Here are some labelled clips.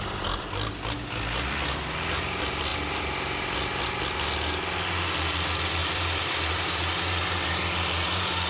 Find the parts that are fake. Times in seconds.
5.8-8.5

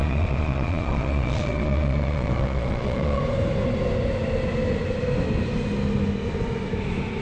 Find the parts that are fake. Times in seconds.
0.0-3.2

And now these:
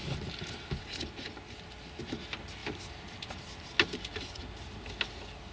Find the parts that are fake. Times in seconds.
none

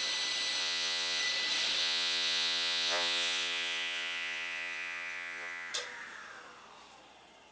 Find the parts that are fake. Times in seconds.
0.6-1.2; 1.8-5.7

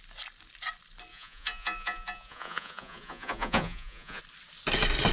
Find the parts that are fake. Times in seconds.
1.1-4.2

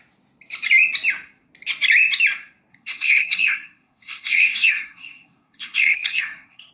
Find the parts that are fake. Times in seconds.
2.7-6.7

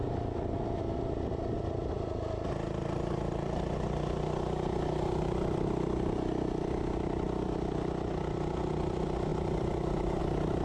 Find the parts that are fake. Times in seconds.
none

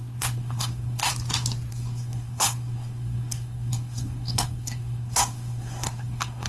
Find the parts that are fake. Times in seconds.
0.0-1.1; 1.7-6.5